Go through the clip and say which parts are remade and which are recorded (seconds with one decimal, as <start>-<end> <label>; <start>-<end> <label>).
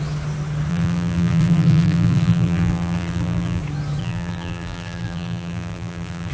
0.0-0.7 recorded; 0.7-3.6 remade; 3.6-4.0 recorded; 4.0-6.3 remade